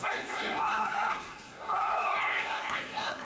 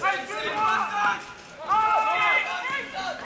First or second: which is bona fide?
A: second